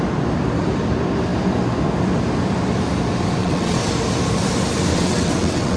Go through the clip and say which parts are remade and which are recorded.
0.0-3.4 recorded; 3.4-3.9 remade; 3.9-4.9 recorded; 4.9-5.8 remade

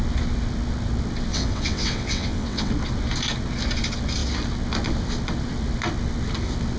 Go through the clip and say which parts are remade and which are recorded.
0.0-1.3 recorded; 1.3-2.7 remade; 2.7-6.8 recorded